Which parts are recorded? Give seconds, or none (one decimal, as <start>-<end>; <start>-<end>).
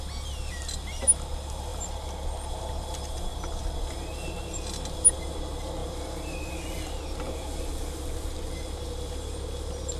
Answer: 0.0-10.0